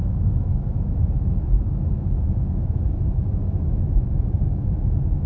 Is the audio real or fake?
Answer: fake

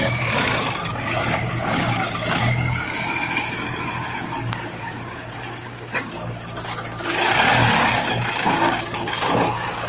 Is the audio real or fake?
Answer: fake